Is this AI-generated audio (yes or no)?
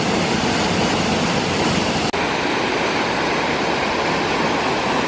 no